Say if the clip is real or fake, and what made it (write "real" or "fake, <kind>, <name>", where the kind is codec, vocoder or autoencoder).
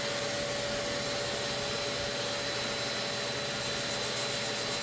real